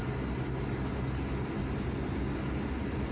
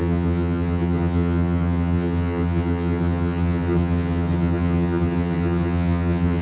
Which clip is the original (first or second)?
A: first